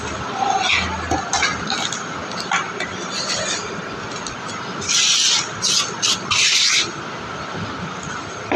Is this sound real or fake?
real